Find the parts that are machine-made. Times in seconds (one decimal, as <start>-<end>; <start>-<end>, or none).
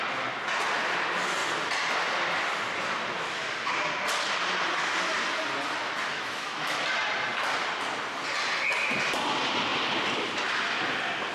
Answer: 6.1-6.8